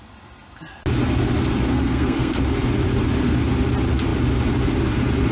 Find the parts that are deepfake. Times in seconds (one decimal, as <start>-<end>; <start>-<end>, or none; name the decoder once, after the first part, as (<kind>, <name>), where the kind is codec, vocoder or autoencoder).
1.7-2.4 (codec, SNAC)